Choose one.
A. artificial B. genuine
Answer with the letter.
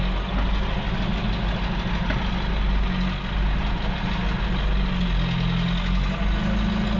B